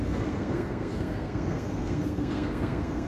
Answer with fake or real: fake